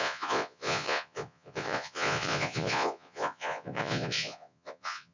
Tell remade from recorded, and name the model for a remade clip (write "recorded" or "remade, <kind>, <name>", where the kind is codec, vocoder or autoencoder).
remade, vocoder, Vocos